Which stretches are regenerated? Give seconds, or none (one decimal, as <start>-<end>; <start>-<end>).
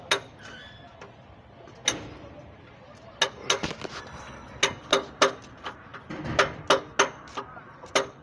none